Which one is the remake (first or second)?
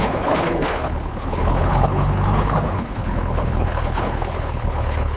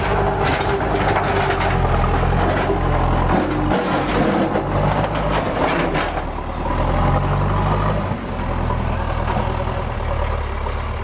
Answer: first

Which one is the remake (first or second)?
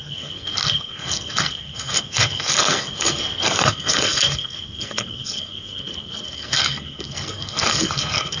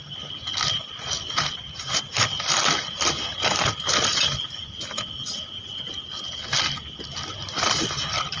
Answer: first